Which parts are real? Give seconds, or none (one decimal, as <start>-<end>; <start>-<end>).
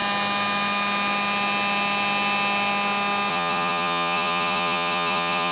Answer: 0.0-3.3